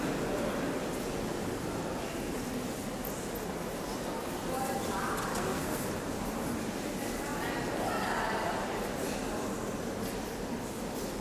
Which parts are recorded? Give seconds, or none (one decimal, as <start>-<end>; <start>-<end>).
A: 0.0-5.3; 5.9-11.2